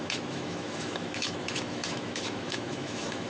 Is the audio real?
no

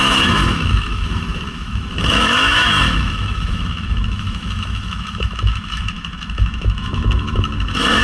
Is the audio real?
no